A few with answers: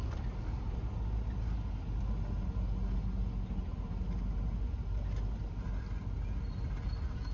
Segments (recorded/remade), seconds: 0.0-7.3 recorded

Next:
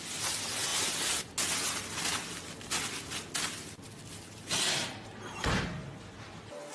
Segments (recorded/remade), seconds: 0.0-6.7 recorded

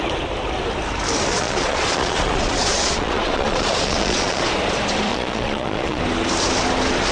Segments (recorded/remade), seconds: 0.0-1.3 recorded; 1.3-4.4 remade; 4.4-5.1 recorded; 5.1-6.0 remade; 6.0-7.1 recorded

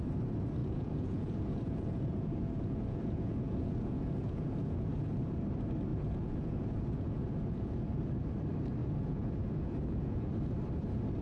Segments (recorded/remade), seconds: 0.0-0.6 recorded; 0.6-5.4 remade; 5.4-5.9 recorded; 5.9-8.0 remade; 8.0-8.8 recorded; 8.8-10.3 remade; 10.3-11.2 recorded

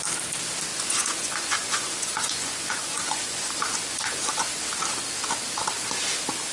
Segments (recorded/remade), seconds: 0.0-0.7 recorded; 0.7-4.6 remade; 4.6-6.5 recorded

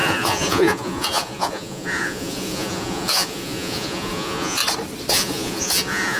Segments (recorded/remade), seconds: 0.0-4.6 remade; 4.6-5.1 recorded; 5.1-6.2 remade

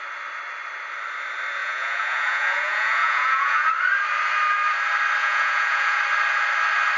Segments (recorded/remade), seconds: 0.0-1.6 recorded; 1.6-3.7 remade; 3.7-5.2 recorded; 5.2-6.0 remade; 6.0-7.0 recorded